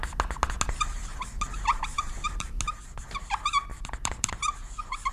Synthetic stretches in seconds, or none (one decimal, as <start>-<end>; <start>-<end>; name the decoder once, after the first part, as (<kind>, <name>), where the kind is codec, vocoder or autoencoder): 1.7-2.6 (vocoder, BigVGAN v2); 3.7-4.3